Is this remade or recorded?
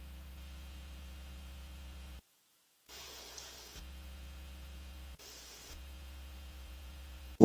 remade